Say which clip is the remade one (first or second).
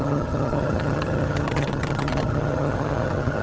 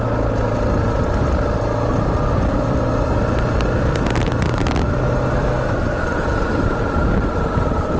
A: first